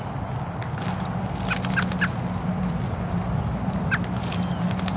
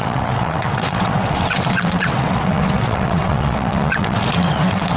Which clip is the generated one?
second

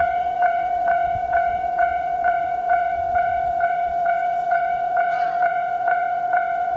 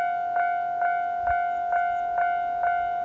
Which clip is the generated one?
first